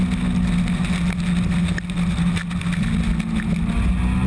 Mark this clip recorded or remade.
recorded